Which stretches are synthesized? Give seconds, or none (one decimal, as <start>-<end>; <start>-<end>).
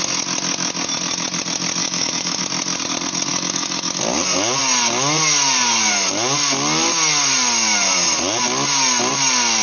1.8-2.4; 3.3-4.0